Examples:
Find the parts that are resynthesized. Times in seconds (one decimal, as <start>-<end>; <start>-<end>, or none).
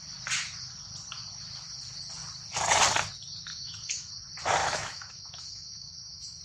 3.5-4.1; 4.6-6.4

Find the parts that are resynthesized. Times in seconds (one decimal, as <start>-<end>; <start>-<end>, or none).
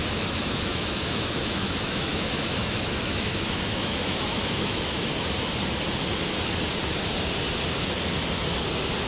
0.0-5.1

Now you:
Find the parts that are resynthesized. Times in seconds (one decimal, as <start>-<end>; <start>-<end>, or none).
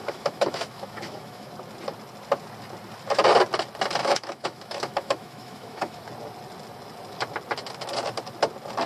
0.0-1.5; 4.0-6.0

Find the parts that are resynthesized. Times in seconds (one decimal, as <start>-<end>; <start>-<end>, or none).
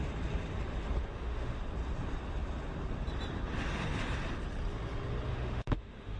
1.1-1.6; 5.3-6.2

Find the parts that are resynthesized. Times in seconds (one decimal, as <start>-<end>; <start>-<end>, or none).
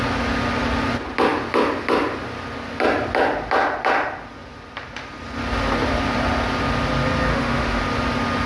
7.3-7.8